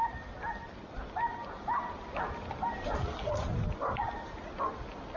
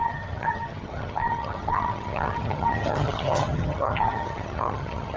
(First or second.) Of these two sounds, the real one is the first